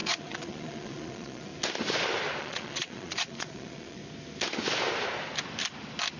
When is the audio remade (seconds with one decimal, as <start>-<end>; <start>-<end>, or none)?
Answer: 0.0-1.5; 2.4-4.0